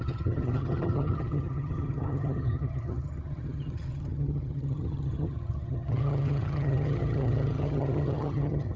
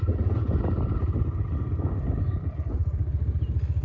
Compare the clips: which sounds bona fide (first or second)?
second